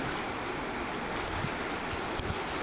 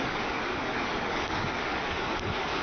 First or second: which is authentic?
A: first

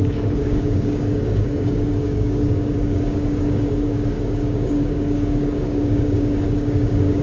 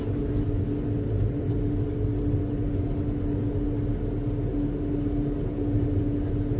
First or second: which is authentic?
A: second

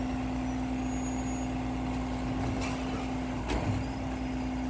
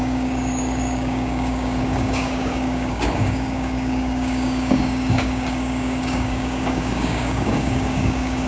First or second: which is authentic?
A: first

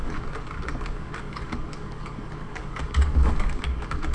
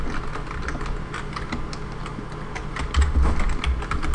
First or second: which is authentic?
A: second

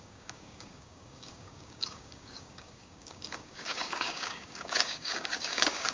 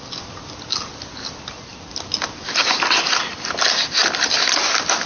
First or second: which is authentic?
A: second